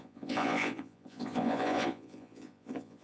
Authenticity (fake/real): fake